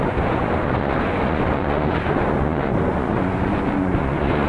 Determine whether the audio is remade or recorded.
remade